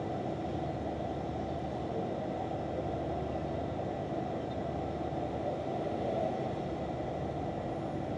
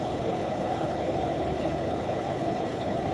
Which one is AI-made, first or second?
second